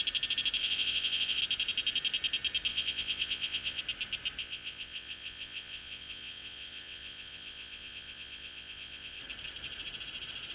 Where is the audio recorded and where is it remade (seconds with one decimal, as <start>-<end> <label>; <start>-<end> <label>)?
0.0-0.6 recorded; 0.6-1.4 remade; 1.4-2.7 recorded; 2.7-3.8 remade; 3.8-4.4 recorded; 4.4-9.2 remade; 9.2-10.5 recorded